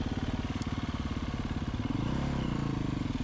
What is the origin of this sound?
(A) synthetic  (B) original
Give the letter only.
B